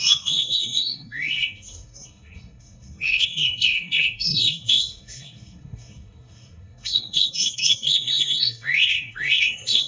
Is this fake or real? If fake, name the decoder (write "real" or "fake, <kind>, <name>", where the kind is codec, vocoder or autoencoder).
fake, codec, SNAC